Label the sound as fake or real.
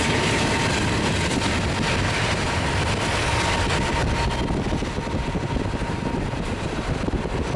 real